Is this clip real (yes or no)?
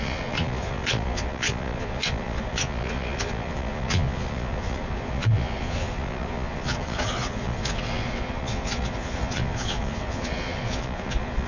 no